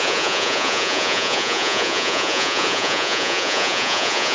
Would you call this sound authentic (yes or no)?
no